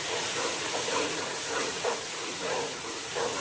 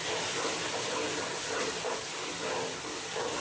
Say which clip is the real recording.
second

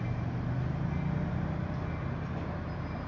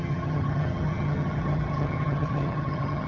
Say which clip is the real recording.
first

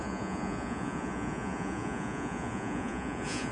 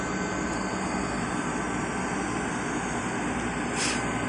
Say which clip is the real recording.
second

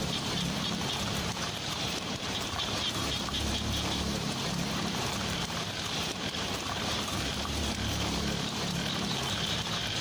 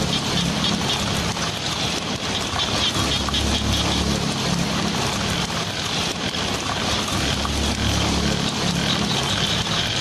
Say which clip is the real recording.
second